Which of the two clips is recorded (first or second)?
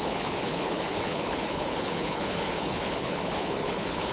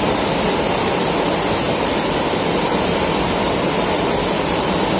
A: second